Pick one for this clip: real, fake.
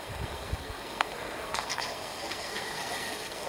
fake